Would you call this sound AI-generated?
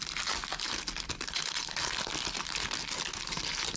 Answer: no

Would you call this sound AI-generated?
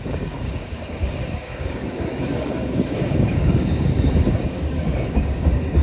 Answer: yes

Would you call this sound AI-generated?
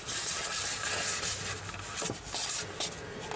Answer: no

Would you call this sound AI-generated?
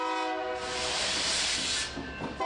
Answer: no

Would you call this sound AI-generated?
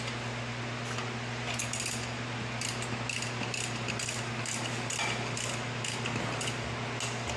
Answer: no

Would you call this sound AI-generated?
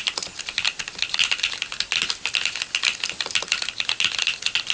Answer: no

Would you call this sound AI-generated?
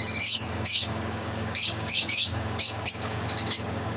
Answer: yes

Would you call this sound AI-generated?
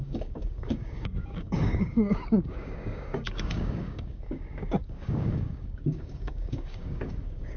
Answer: yes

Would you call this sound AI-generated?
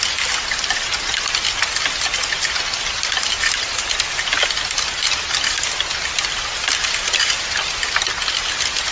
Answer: no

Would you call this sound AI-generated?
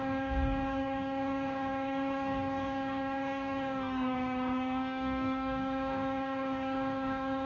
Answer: yes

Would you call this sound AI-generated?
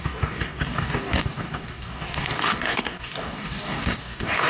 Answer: yes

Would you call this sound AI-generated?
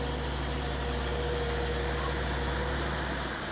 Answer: no